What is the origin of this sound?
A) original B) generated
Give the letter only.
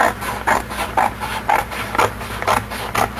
A